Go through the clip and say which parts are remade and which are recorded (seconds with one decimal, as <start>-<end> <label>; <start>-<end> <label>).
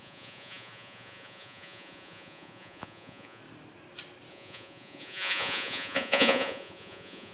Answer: 0.0-3.4 remade; 3.4-4.3 recorded; 4.3-7.3 remade